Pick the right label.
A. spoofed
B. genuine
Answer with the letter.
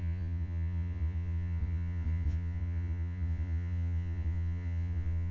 A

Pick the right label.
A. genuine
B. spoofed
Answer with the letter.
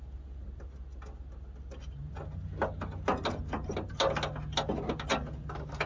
A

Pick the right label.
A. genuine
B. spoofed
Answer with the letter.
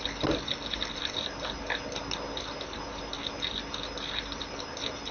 A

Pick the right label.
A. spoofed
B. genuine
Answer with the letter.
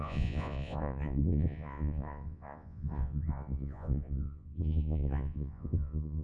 A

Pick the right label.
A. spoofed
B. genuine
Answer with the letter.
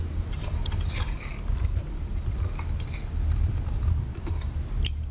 B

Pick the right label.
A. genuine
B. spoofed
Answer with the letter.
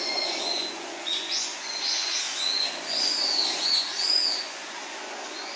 B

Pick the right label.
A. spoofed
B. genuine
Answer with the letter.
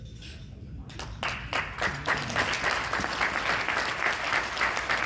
B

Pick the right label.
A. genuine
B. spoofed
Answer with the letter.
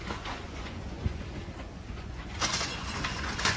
B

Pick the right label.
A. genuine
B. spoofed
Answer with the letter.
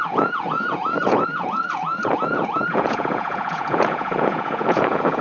B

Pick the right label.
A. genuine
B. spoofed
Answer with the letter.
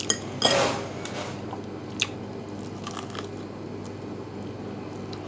A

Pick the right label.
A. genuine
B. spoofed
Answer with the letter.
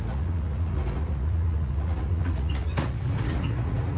B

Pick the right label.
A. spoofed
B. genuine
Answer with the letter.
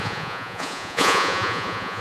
A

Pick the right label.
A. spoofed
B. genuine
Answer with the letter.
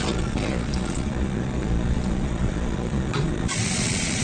A